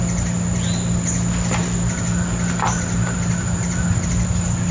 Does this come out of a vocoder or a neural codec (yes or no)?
no